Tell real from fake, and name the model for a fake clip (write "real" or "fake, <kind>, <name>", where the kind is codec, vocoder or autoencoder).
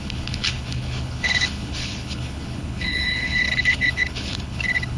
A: fake, codec, HILCodec